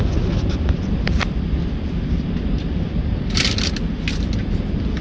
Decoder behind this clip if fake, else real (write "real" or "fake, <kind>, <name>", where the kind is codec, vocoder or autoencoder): real